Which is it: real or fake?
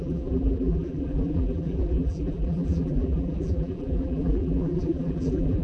fake